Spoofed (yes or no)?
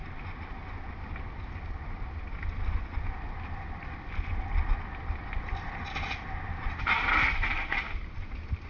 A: no